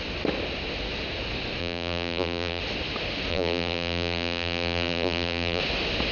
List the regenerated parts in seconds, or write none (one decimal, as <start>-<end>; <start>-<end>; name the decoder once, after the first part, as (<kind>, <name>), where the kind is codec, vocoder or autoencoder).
1.6-2.6 (vocoder, BigVGAN v2); 3.3-5.6